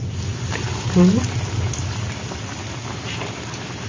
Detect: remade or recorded recorded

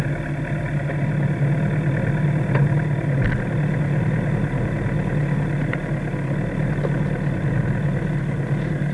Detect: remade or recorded recorded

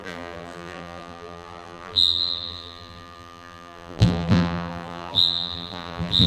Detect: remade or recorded remade